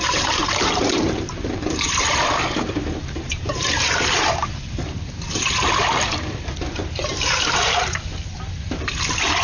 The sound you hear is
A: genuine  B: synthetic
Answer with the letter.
B